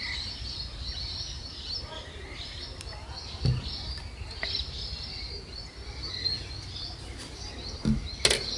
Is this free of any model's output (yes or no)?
yes